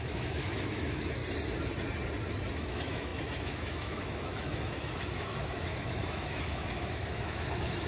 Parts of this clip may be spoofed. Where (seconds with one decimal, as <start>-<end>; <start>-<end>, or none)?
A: 0.0-1.2; 2.5-7.9